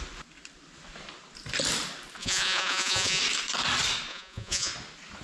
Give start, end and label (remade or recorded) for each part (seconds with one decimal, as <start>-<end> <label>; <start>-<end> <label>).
0.0-2.2 recorded; 2.2-3.2 remade; 3.2-4.1 recorded; 4.1-4.7 remade; 4.7-5.2 recorded